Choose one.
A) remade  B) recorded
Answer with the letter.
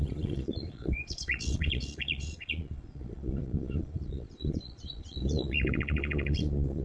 A